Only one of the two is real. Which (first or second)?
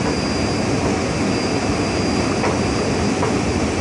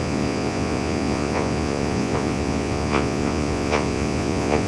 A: first